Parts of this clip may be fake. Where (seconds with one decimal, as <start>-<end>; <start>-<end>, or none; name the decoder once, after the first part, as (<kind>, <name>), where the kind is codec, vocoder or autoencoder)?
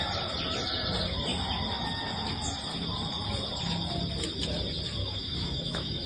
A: 5.0-6.1 (autoencoder, DAC-VAE)